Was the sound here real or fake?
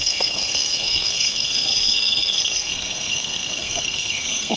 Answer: fake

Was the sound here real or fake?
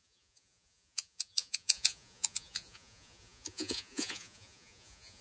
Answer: fake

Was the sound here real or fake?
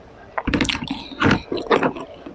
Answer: real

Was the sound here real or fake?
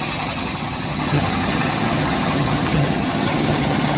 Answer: fake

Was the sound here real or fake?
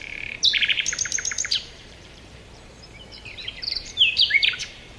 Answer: fake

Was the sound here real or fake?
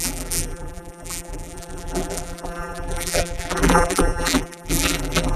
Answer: fake